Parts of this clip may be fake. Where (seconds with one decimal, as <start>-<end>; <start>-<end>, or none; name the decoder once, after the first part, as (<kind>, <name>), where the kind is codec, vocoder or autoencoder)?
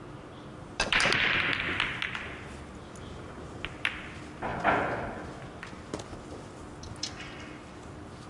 none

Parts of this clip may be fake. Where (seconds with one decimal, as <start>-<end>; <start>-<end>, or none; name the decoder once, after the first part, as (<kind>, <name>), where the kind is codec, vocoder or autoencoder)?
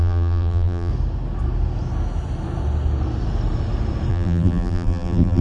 0.0-0.9 (vocoder, BigVGAN v2); 4.1-5.4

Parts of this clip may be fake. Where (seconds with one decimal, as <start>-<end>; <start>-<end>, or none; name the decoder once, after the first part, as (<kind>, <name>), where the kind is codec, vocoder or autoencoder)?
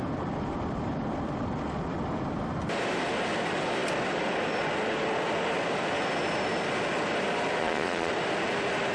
7.6-8.1 (vocoder, Vocos)